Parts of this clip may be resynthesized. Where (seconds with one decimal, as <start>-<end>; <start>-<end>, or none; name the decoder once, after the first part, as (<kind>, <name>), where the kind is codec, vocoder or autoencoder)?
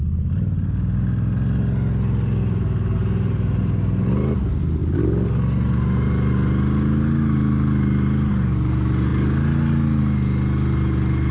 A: none